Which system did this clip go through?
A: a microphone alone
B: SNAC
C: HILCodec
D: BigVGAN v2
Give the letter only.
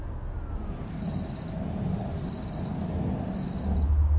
A